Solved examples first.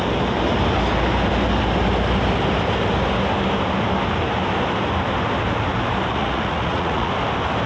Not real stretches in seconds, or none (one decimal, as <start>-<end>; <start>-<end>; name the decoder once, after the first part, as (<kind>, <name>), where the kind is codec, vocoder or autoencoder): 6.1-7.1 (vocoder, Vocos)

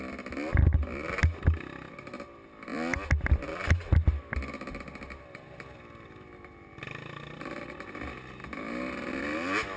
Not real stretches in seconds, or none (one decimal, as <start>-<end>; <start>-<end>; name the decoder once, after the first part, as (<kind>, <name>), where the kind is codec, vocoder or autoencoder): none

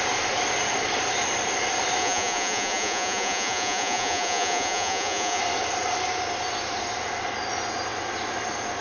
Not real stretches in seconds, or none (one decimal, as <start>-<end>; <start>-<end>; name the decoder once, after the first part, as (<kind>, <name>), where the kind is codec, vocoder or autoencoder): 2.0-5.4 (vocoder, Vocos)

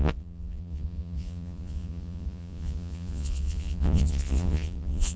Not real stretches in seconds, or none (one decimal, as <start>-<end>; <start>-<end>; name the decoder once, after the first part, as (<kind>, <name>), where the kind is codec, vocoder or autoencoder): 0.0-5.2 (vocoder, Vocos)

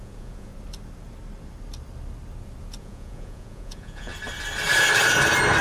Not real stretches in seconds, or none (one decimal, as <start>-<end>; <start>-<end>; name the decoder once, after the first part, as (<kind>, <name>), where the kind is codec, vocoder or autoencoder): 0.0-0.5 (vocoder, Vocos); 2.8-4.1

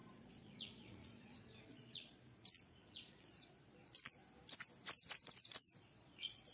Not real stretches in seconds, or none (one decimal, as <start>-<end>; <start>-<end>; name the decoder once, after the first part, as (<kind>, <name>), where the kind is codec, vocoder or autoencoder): 0.0-4.2 (vocoder, Vocos); 5.2-6.5

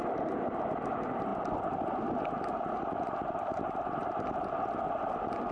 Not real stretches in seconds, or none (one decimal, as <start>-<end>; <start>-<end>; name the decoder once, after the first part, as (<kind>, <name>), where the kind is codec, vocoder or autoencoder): none